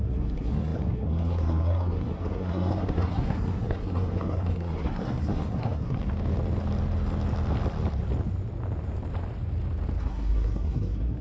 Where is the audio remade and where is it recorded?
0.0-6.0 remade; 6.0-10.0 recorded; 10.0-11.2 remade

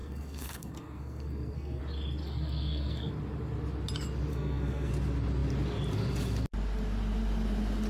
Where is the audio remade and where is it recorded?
0.0-1.8 remade; 1.8-2.2 recorded; 2.2-3.1 remade; 3.1-4.3 recorded; 4.3-4.9 remade; 4.9-7.9 recorded

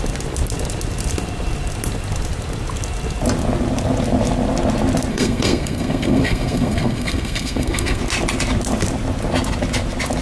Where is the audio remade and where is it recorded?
0.0-5.1 recorded; 5.1-8.0 remade; 8.0-10.2 recorded

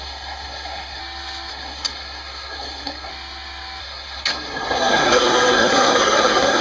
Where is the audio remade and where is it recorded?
0.0-1.0 remade; 1.0-1.5 recorded; 1.5-3.1 remade; 3.1-3.8 recorded; 3.8-6.6 remade

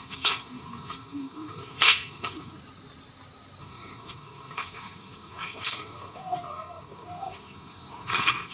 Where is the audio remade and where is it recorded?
0.0-2.6 remade; 2.6-3.6 recorded; 3.6-8.5 remade

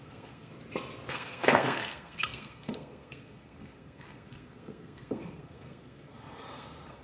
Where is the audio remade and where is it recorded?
0.0-0.5 remade; 0.5-1.1 recorded; 1.1-7.0 remade

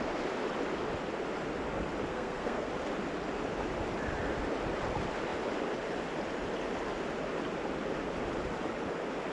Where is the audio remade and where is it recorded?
0.0-2.1 recorded; 2.1-2.7 remade; 2.7-9.3 recorded

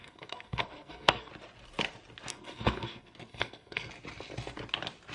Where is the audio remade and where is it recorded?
0.0-1.3 remade; 1.3-2.3 recorded; 2.3-3.9 remade; 3.9-5.1 recorded